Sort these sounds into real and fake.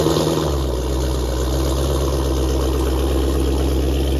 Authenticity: real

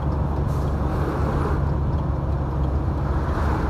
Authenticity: real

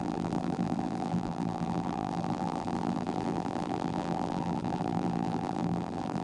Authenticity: fake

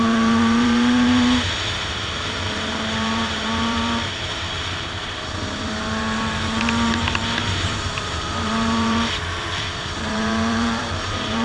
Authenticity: fake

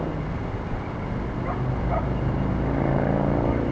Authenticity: real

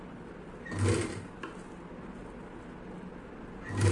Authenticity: real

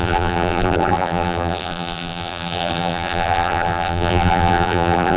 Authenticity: fake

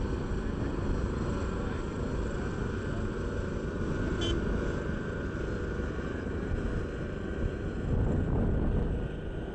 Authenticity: real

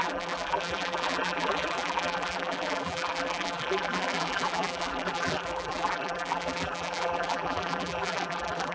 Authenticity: fake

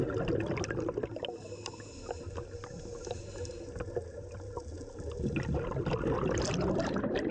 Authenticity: real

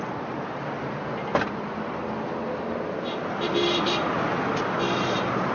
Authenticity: real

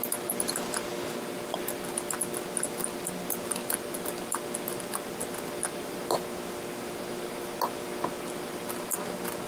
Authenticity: real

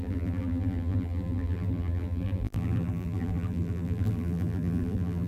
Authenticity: fake